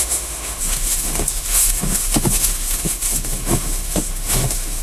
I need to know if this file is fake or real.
fake